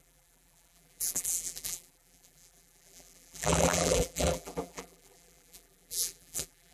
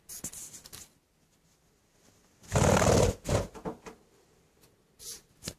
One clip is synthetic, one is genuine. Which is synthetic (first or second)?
first